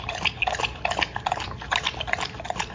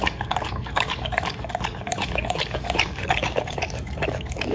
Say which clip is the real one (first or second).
first